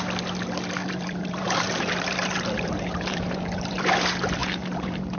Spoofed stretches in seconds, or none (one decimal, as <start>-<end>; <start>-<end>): 0.8-3.9; 4.4-5.2